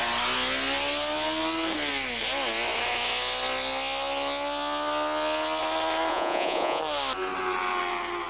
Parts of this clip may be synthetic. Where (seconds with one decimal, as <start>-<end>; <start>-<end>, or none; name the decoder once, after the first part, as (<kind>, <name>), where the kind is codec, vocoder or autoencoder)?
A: 6.1-6.8 (vocoder, Vocos)

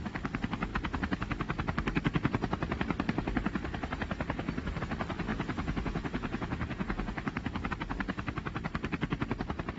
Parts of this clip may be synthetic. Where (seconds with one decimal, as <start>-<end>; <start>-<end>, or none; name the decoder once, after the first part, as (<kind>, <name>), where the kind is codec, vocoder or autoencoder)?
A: 5.3-7.7 (vocoder, Vocos)